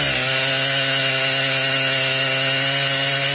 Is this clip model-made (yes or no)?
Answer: no